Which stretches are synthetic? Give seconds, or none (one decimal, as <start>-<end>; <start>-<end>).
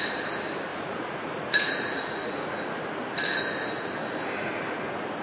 0.7-2.6